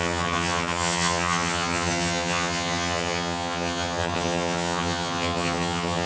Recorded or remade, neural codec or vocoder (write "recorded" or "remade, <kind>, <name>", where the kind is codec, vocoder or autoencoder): remade, vocoder, HiFi-GAN